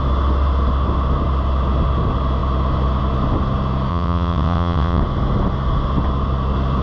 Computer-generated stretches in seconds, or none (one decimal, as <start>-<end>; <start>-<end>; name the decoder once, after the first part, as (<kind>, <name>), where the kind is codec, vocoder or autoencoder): 3.9-5.0 (vocoder, WaveNeXt)